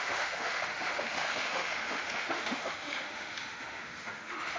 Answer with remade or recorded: remade